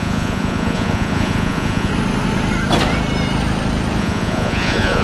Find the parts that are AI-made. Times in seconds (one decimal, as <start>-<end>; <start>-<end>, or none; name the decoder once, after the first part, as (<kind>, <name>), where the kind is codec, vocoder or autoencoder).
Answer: 0.0-1.9 (vocoder, Vocos); 4.0-5.0